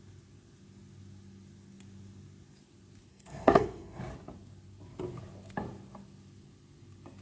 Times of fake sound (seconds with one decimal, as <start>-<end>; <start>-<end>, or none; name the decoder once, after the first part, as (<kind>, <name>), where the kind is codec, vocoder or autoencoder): 3.1-4.0 (codec, SNAC)